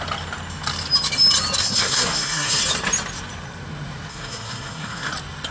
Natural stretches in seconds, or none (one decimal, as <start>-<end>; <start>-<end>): 0.0-1.6; 2.6-4.1; 5.1-5.5